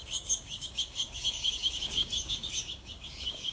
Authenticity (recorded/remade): remade